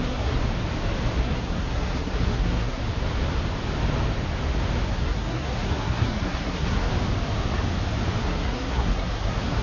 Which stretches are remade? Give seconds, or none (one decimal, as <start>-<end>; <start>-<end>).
0.0-0.4; 1.2-2.8; 4.9-6.9; 8.2-9.6